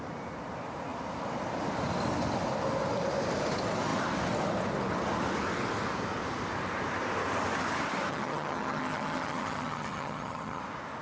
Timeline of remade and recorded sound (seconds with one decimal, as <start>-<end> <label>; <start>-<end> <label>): 0.0-8.1 recorded; 8.1-10.6 remade; 10.6-11.0 recorded